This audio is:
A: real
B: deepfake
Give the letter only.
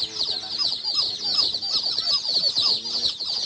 A